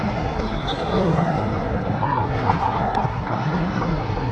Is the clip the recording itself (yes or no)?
no